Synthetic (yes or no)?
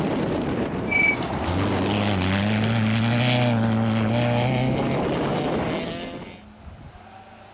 no